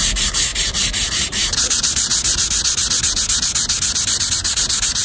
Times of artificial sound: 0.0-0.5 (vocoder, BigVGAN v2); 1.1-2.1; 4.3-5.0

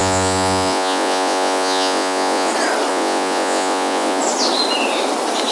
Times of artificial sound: 0.0-2.5 (vocoder, Vocos); 2.9-4.2

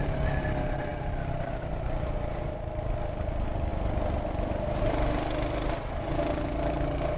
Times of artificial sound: none

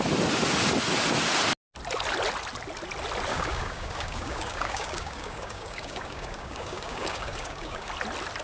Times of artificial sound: 3.3-7.9 (codec, DAC)

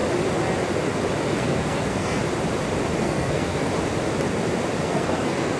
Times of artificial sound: 1.2-2.2 (codec, SNAC); 3.0-3.7; 4.8-5.6

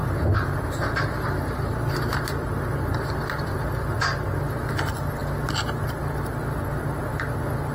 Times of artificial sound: 0.0-4.4 (vocoder, BigVGAN v2)